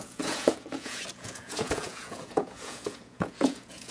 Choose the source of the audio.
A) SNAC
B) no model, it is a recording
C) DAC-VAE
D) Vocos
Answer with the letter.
D